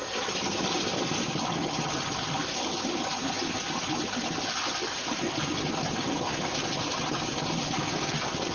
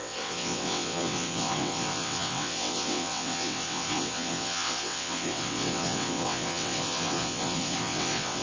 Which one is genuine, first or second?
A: first